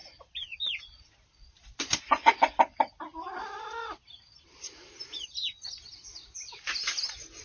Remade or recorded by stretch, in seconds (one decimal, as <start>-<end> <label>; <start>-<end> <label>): 0.0-7.4 recorded